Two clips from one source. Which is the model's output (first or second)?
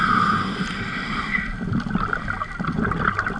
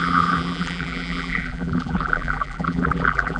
second